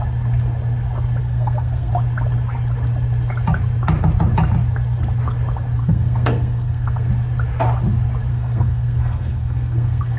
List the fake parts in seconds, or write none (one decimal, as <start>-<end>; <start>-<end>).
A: 1.2-1.9; 5.8-7.1; 8.3-10.2